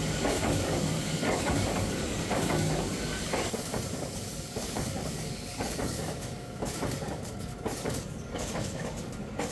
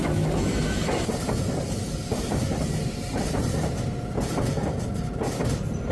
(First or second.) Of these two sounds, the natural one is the second